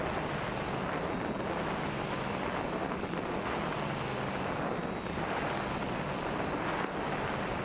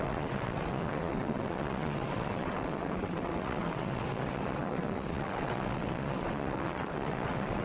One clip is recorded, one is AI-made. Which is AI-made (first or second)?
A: second